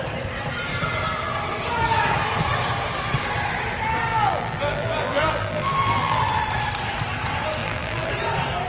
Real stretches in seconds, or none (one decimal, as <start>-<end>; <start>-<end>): 0.0-4.1; 6.2-7.6; 8.1-8.7